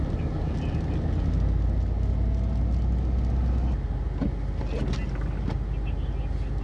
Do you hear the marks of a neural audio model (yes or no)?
no